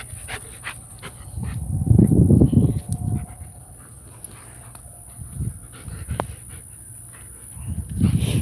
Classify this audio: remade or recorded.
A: recorded